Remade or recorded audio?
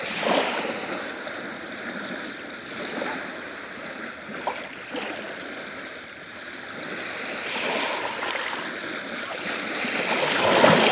recorded